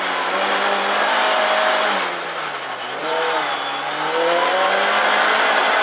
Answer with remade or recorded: recorded